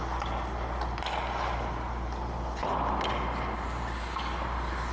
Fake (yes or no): no